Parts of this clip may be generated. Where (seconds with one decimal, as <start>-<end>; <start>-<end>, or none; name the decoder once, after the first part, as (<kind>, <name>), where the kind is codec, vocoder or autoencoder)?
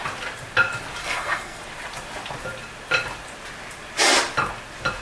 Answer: 1.0-1.6 (codec, SNAC)